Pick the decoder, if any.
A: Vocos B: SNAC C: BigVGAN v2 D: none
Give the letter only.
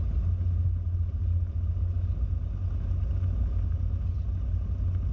D